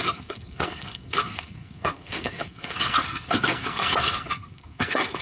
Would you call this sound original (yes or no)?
no